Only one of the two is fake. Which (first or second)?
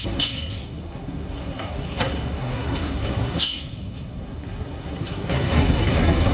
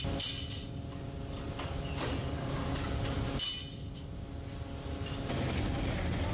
first